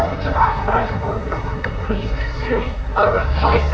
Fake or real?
fake